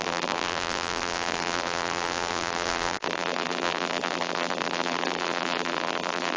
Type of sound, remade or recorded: remade